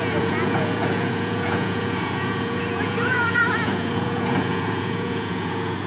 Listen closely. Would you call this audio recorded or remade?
remade